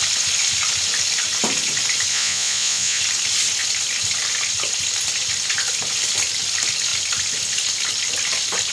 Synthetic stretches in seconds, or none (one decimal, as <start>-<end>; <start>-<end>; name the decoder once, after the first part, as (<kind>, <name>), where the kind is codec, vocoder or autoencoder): 2.1-3.0 (vocoder, Vocos)